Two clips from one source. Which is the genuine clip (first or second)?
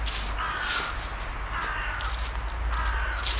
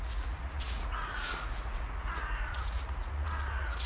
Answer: first